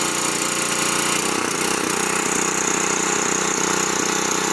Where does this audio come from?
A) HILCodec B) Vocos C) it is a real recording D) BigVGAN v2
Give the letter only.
C